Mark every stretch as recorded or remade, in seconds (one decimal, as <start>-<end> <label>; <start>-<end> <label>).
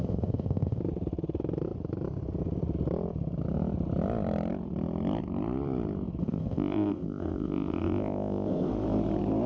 0.0-0.8 remade; 0.8-6.2 recorded; 6.2-8.7 remade; 8.7-9.5 recorded